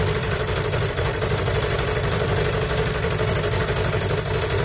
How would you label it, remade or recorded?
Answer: remade